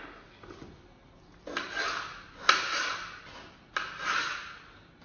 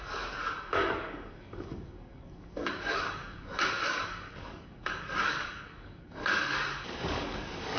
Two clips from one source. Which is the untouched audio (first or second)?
first